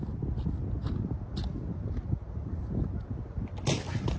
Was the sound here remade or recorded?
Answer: recorded